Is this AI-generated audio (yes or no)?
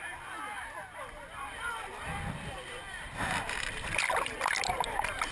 no